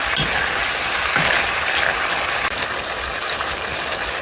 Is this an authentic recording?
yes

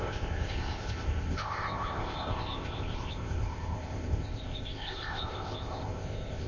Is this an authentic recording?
no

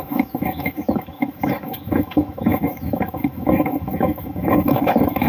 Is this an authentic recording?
no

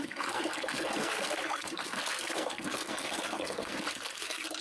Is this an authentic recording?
no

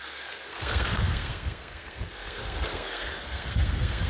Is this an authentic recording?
no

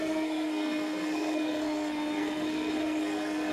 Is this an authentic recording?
no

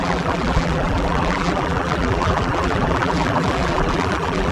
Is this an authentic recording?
no